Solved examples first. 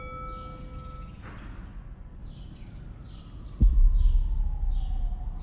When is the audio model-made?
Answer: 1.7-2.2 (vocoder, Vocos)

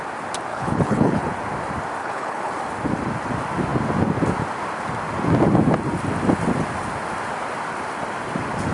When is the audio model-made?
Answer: 0.5-1.2 (codec, HILCodec); 2.0-2.5

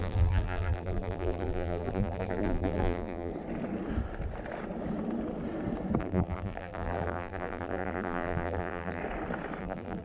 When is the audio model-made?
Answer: 0.0-3.3 (vocoder, BigVGAN v2); 6.0-9.0; 9.6-10.0

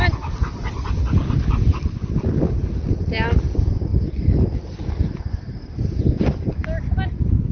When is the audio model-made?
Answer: none

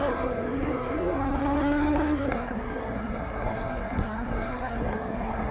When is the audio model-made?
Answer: 0.0-5.5 (codec, SNAC)

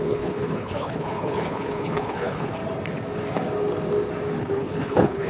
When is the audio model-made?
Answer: 0.0-2.6 (codec, HILCodec); 4.4-5.3